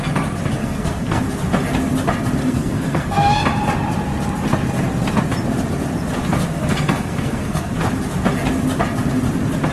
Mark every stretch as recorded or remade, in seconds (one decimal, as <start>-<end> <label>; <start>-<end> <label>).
0.0-0.6 recorded; 0.6-1.2 remade; 1.2-2.4 recorded; 2.4-3.4 remade; 3.4-6.6 recorded; 6.6-7.7 remade; 7.7-9.7 recorded